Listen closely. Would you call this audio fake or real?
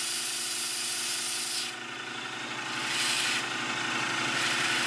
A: real